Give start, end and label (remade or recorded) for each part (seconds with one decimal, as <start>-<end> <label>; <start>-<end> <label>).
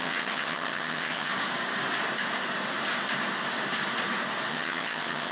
0.0-1.3 remade; 1.3-4.5 recorded; 4.5-5.3 remade